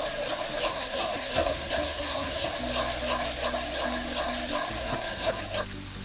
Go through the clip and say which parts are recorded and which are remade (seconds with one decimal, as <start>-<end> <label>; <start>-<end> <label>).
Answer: 0.0-0.7 recorded; 0.7-2.5 remade; 2.5-4.8 recorded; 4.8-5.4 remade; 5.4-6.0 recorded